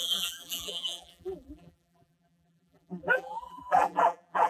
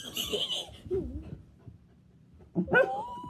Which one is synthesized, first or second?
first